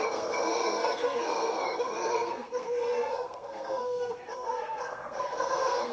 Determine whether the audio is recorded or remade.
remade